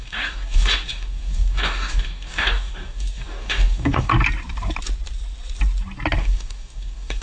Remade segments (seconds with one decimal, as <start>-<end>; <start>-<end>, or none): 0.0-4.1; 6.2-7.2